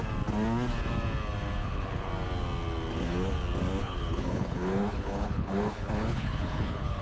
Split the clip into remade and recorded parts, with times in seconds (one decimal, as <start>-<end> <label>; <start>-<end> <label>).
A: 0.0-1.6 recorded; 1.6-2.1 remade; 2.1-3.8 recorded; 3.8-7.0 remade